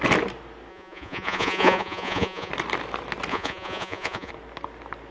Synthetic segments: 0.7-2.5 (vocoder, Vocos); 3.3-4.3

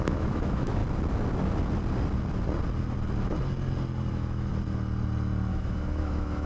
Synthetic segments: 0.0-0.8 (autoencoder, DAC-VAE); 4.1-4.5; 5.5-6.5

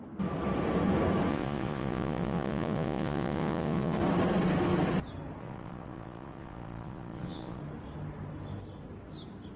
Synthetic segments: 1.3-4.0 (vocoder, Vocos); 5.4-7.6

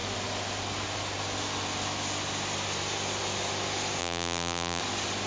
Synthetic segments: 4.0-4.8 (vocoder, BigVGAN v2)